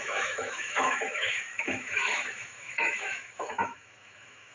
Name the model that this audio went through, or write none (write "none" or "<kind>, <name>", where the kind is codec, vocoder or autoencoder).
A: autoencoder, DAC-VAE